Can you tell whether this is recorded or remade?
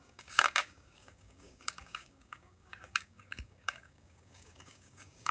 remade